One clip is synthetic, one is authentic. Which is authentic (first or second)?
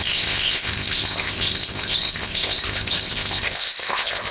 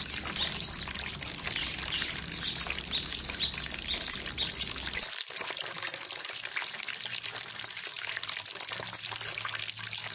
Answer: second